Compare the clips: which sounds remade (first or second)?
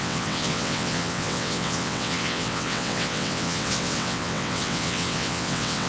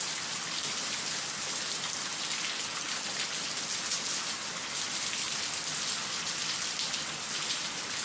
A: first